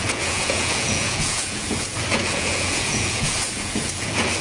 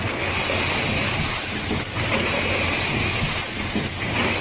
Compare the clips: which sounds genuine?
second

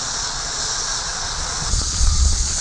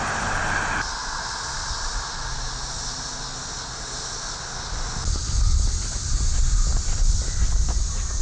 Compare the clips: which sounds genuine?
second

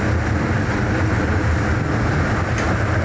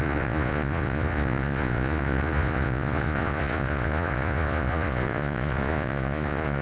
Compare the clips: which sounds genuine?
first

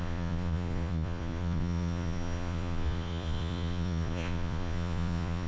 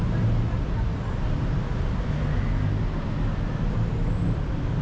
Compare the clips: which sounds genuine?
second